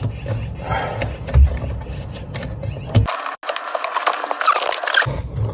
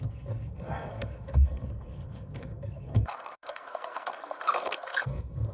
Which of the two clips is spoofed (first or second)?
second